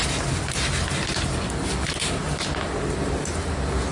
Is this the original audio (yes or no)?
yes